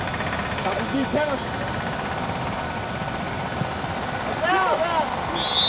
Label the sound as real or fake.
real